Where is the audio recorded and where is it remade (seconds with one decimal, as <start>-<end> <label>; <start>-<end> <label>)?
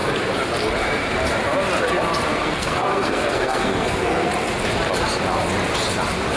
0.0-2.3 recorded; 2.3-4.3 remade; 4.3-6.4 recorded